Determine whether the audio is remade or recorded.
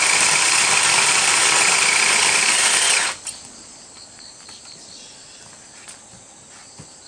recorded